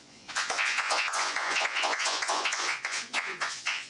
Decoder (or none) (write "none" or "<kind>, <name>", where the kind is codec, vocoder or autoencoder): vocoder, Vocos